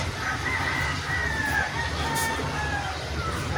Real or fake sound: real